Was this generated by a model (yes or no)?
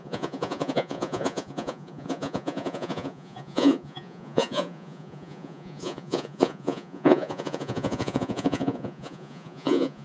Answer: yes